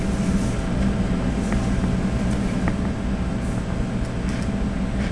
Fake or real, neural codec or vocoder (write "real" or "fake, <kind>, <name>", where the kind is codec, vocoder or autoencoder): real